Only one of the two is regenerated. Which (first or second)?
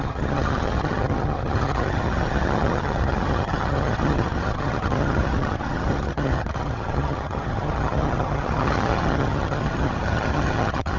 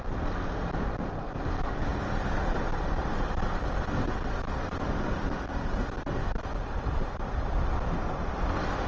first